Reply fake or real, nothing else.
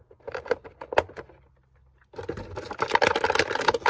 real